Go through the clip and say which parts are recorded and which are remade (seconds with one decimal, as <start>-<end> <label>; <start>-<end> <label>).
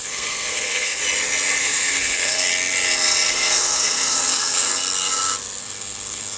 0.0-1.0 remade; 1.0-1.6 recorded; 1.6-2.5 remade; 2.5-3.3 recorded; 3.3-4.7 remade; 4.7-5.6 recorded; 5.6-6.4 remade